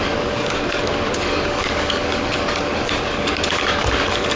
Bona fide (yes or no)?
no